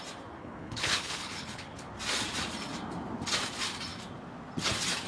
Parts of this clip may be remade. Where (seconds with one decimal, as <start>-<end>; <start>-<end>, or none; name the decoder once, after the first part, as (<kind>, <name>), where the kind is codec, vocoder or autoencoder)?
0.4-1.9 (codec, HILCodec)